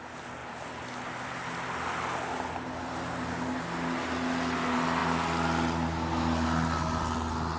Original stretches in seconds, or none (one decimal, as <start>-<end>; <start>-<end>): 0.0-7.6